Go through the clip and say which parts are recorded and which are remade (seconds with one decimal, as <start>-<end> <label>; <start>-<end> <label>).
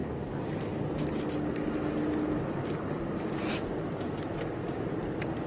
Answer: 0.0-5.5 recorded